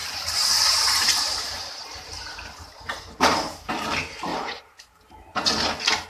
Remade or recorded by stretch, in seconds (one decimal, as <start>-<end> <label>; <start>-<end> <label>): 0.0-3.7 remade; 3.7-4.3 recorded; 4.3-4.8 remade; 4.8-6.1 recorded